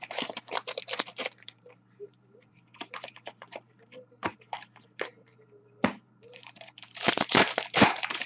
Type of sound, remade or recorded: remade